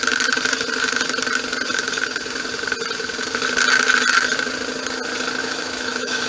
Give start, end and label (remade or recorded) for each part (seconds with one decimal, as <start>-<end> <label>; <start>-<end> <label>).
0.0-5.4 recorded; 5.4-6.3 remade